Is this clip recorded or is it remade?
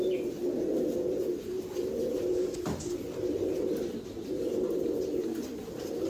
recorded